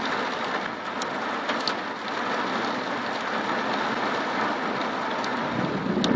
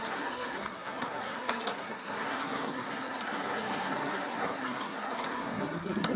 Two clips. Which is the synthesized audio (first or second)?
second